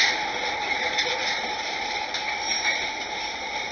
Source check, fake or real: fake